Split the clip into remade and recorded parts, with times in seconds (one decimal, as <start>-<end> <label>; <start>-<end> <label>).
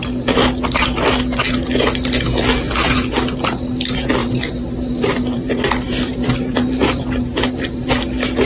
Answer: 0.0-4.2 recorded; 4.2-7.9 remade; 7.9-8.5 recorded